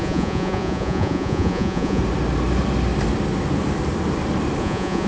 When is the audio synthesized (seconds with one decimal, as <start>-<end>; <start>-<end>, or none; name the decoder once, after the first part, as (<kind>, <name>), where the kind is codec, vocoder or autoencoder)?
0.0-2.0 (vocoder, Vocos); 4.6-5.1